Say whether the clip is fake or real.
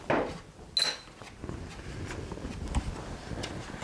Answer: real